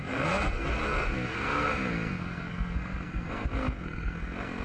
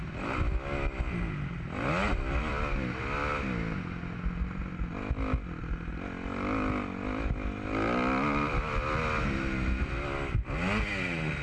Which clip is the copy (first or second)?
first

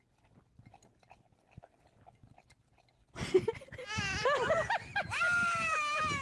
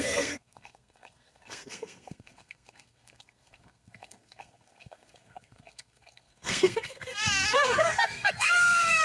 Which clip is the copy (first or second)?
second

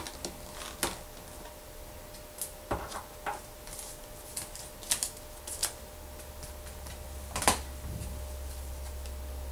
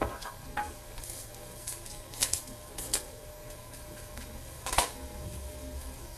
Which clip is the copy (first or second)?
second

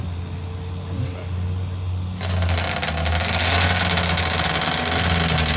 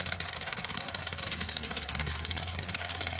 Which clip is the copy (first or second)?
second